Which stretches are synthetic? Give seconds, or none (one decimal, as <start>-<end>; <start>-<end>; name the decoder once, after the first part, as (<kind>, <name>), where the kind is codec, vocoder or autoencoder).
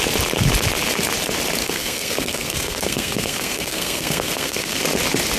1.6-4.8 (codec, SNAC)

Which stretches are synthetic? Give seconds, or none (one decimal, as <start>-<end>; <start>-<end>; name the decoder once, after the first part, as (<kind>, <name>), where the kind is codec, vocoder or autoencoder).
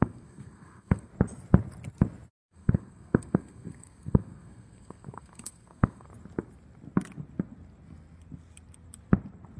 0.0-1.1 (codec, SNAC); 2.3-6.1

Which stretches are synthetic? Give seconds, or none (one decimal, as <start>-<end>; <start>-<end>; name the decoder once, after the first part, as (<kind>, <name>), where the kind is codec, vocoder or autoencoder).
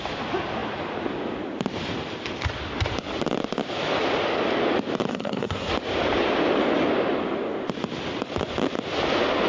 5.1-5.7 (codec, SNAC)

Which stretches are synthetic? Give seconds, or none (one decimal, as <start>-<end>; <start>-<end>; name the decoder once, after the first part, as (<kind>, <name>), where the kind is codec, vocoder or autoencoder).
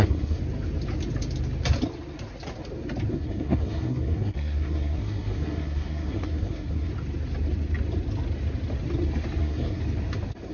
0.0-0.4 (codec, SNAC); 3.1-6.9; 9.4-9.8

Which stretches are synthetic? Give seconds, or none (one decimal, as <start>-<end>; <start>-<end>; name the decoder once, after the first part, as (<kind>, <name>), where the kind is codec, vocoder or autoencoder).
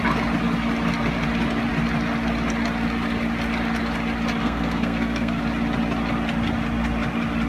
4.4-5.4 (codec, SNAC)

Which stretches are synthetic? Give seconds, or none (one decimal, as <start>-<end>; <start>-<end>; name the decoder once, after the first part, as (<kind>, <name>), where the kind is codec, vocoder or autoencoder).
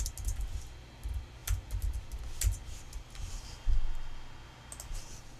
none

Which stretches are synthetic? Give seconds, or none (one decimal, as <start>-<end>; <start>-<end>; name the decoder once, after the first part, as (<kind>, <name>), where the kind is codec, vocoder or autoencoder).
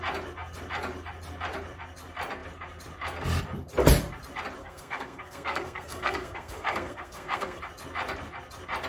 4.6-7.6 (codec, SNAC)